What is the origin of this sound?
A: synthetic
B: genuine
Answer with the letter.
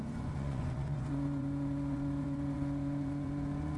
A